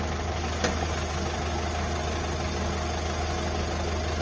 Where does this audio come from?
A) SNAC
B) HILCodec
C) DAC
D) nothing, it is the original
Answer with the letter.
D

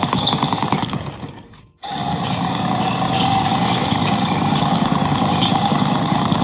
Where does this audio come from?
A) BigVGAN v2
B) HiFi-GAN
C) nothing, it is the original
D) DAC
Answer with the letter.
D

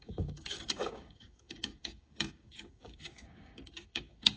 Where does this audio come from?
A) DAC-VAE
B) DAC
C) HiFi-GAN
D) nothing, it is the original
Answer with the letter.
B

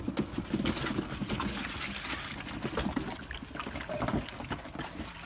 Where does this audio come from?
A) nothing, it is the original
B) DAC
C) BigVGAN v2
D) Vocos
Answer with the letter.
A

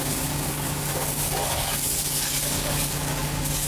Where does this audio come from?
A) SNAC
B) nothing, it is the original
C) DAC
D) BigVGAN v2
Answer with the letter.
C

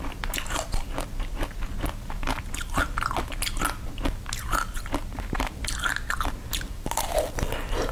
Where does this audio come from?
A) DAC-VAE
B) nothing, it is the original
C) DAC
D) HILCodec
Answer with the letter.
B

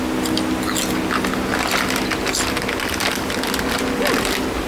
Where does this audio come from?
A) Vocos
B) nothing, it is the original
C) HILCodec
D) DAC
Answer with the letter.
B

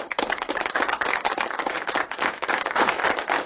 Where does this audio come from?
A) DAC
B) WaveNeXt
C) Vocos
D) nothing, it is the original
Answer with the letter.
A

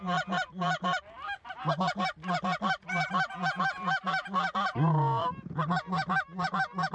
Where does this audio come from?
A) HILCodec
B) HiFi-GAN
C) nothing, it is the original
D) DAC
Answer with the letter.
C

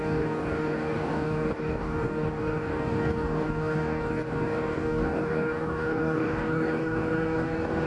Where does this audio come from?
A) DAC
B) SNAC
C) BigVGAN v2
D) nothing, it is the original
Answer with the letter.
A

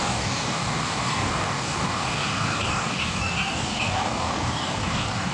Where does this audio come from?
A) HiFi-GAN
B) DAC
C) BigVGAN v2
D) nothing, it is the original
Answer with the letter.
B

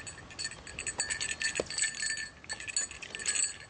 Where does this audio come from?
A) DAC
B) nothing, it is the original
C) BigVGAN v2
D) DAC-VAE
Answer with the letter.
B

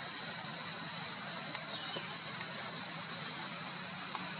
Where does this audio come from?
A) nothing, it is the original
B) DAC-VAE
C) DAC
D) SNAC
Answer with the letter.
A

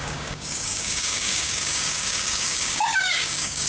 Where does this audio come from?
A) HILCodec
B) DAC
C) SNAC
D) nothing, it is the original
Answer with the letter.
B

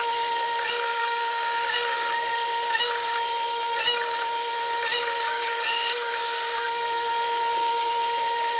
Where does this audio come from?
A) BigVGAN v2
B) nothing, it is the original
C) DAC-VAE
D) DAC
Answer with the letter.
D